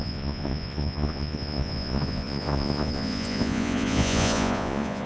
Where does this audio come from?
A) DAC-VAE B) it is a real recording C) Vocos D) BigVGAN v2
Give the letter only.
C